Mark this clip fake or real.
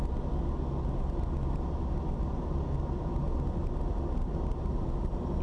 real